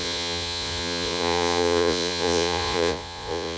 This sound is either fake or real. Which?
fake